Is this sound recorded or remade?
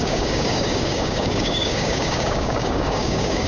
remade